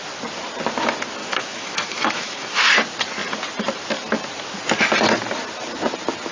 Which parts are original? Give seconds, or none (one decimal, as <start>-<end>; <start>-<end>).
0.0-1.2; 2.6-6.3

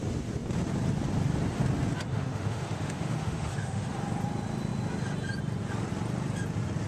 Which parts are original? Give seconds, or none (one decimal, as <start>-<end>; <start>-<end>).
0.0-2.1; 3.9-6.9